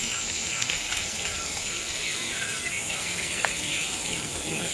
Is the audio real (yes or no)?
no